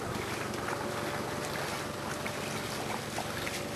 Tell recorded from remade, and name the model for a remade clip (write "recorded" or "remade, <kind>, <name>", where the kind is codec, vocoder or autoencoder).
recorded